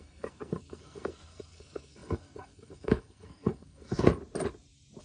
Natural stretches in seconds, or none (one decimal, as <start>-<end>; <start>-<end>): 4.1-5.0

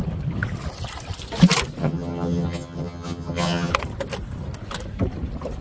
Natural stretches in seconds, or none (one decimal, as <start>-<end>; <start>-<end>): 0.0-1.8; 3.7-5.6

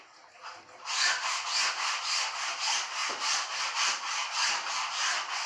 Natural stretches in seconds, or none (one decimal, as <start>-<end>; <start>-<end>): 0.0-5.5

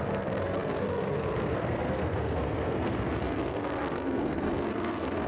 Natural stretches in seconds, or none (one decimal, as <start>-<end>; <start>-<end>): none

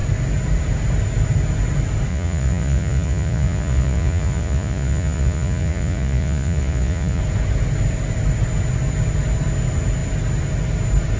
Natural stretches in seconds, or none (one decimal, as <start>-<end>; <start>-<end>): 0.0-2.1; 7.2-11.2

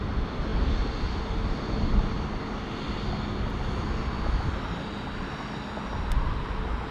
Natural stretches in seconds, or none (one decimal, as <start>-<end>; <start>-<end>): 0.0-6.9